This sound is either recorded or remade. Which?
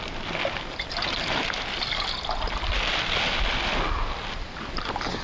recorded